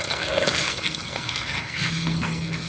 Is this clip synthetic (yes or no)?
yes